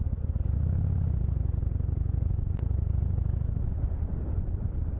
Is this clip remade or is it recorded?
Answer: recorded